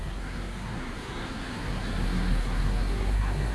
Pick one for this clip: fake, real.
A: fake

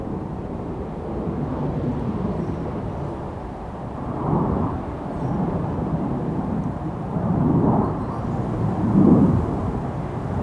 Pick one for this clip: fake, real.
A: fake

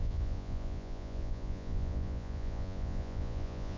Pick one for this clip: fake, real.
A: fake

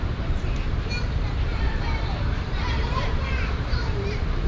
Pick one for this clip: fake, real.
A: fake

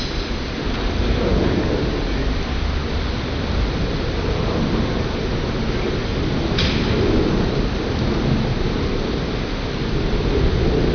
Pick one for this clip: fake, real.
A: real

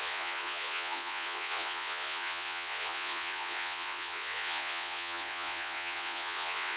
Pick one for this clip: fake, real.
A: fake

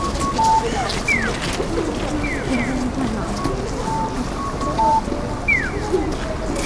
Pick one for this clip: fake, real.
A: real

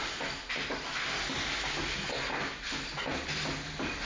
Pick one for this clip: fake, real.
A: real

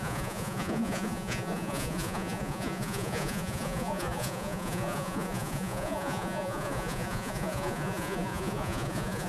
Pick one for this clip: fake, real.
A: fake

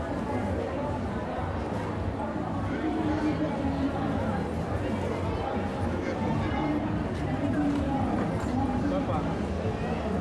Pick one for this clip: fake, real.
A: real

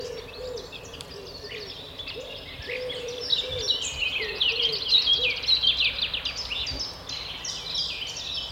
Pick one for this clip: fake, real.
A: real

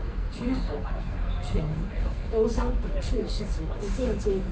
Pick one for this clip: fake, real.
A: fake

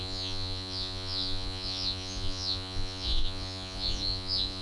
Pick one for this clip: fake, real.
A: fake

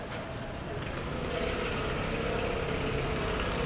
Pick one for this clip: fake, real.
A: real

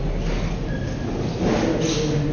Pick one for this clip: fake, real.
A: real